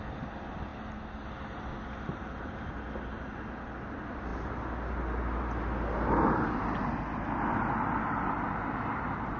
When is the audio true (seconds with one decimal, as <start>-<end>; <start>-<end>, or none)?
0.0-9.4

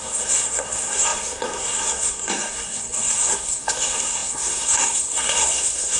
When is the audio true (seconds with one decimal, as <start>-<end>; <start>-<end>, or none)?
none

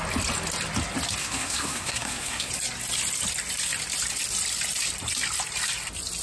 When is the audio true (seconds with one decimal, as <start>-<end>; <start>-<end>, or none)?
0.0-1.2; 2.5-6.2

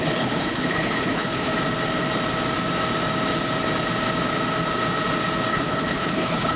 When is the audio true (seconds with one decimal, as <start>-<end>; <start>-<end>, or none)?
1.5-5.5